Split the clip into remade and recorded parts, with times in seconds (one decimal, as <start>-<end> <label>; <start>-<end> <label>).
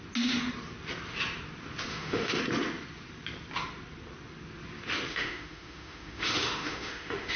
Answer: 0.0-1.9 recorded; 1.9-2.4 remade; 2.4-5.1 recorded; 5.1-7.4 remade